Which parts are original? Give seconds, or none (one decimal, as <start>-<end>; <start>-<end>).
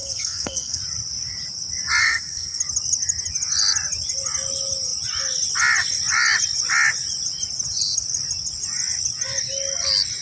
0.8-2.0; 2.6-10.2